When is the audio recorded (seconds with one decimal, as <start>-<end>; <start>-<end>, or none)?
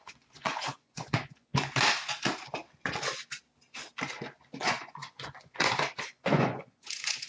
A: 1.5-4.6